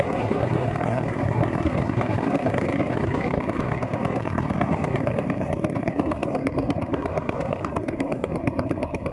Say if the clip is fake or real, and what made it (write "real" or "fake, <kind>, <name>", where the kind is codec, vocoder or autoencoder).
fake, codec, SNAC